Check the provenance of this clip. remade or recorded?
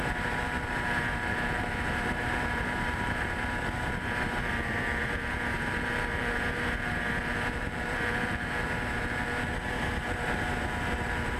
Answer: remade